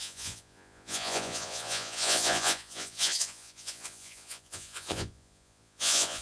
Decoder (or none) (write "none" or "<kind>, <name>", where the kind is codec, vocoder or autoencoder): vocoder, Vocos